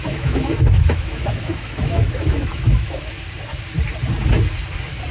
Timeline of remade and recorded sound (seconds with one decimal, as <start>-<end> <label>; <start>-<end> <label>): 0.0-3.1 remade; 3.1-5.1 recorded

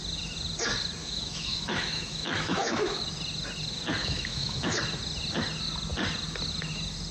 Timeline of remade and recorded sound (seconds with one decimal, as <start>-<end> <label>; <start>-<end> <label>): 0.0-1.0 recorded; 1.0-3.0 remade; 3.0-4.0 recorded; 4.0-4.8 remade; 4.8-7.1 recorded